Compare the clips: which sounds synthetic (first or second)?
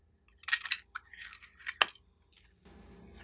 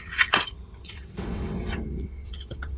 second